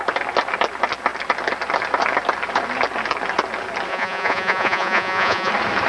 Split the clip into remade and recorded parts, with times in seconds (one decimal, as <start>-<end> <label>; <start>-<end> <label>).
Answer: 0.0-3.9 recorded; 3.9-5.5 remade; 5.5-5.9 recorded